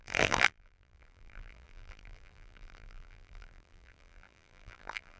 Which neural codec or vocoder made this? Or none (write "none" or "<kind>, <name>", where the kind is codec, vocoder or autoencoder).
vocoder, BigVGAN v2